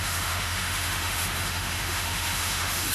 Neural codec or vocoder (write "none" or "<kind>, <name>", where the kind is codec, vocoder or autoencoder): autoencoder, DAC-VAE